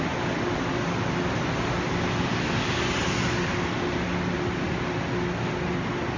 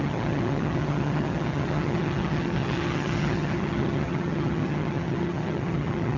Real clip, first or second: first